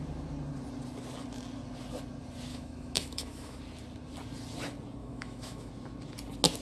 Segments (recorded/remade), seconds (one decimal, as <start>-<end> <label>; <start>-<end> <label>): 0.0-2.5 recorded; 2.5-3.6 remade; 3.6-5.0 recorded; 5.0-5.7 remade; 5.7-6.6 recorded